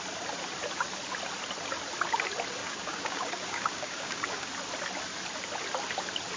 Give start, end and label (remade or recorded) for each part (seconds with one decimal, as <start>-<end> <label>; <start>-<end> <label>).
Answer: 0.0-2.6 recorded; 2.6-4.5 remade; 4.5-6.4 recorded